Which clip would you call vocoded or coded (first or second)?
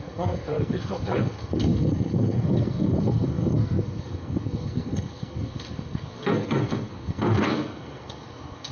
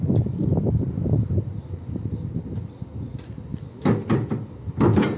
first